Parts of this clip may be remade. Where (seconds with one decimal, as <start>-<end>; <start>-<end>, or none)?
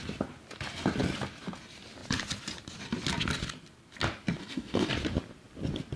4.4-4.9